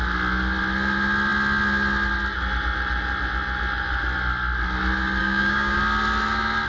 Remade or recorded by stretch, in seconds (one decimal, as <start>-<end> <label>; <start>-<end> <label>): 0.0-5.2 recorded; 5.2-5.8 remade; 5.8-6.7 recorded